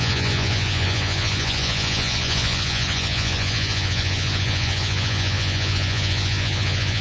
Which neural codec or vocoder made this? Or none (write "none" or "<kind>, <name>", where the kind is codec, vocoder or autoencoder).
vocoder, Vocos